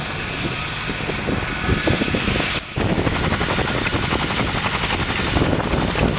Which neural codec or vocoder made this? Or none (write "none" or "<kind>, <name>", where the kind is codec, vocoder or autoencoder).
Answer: none